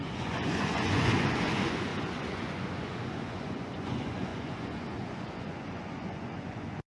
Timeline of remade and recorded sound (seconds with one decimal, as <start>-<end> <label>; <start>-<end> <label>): 0.0-7.0 remade